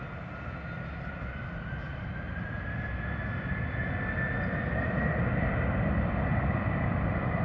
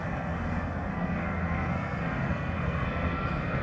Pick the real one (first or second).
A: first